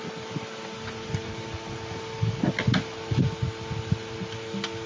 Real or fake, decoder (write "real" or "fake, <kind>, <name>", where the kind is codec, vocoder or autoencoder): real